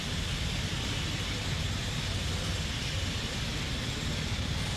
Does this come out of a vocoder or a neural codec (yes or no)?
no